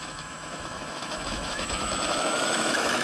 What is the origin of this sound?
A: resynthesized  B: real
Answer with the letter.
A